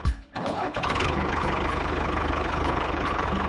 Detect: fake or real fake